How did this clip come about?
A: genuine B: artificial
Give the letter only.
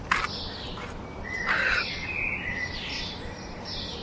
A